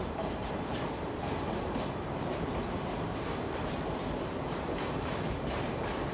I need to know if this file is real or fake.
fake